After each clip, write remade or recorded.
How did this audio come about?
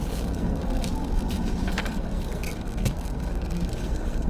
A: remade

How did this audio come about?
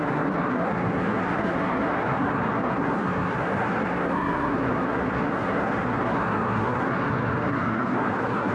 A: remade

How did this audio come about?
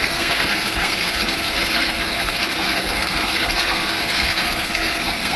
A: remade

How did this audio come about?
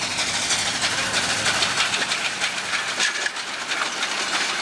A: recorded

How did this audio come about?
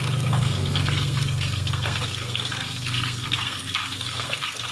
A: remade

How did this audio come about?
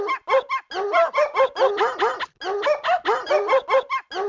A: recorded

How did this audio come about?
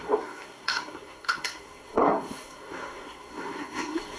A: remade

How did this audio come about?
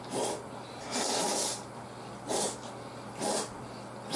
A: recorded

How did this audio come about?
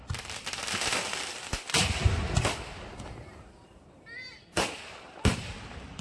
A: recorded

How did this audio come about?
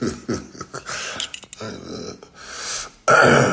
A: recorded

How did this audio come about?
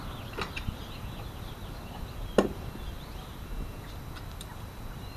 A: recorded